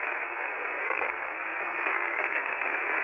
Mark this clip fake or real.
fake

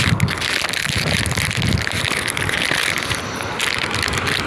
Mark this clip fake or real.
real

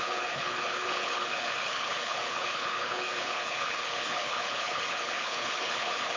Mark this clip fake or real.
fake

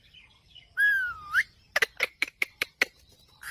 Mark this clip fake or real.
fake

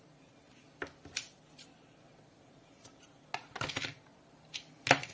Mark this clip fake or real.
real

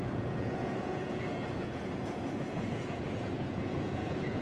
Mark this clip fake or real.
fake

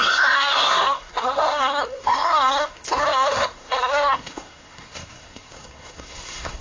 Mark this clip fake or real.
fake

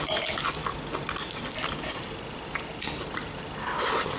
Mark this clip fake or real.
real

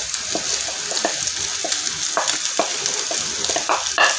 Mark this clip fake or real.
real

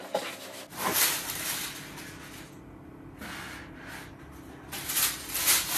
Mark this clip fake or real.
real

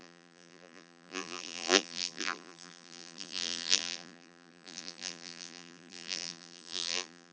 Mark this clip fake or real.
fake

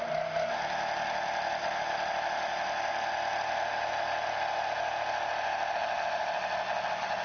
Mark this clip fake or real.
real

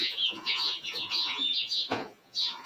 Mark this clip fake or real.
fake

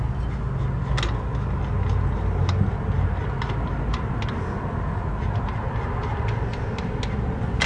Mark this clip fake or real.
real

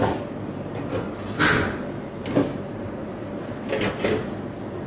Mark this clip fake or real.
real